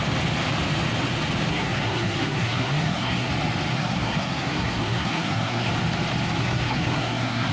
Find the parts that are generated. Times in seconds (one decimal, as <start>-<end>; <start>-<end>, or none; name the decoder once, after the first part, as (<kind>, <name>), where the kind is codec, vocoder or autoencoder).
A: 1.5-3.3 (codec, SNAC); 3.7-5.7; 6.4-7.5